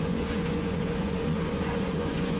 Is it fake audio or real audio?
fake